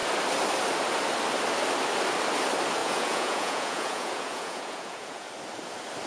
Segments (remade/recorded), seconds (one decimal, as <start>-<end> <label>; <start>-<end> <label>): 0.0-2.8 recorded; 2.8-5.3 remade; 5.3-6.1 recorded